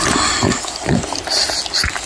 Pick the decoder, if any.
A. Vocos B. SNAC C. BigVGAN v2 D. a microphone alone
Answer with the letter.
D